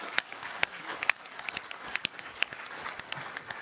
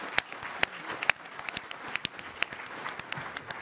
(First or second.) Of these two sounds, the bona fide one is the second